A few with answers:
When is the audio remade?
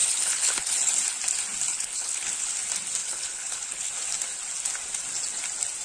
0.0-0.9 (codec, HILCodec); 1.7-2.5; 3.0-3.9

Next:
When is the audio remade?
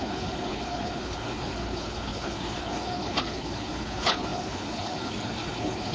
0.0-5.9 (codec, HILCodec)